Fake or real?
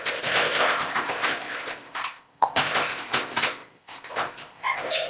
fake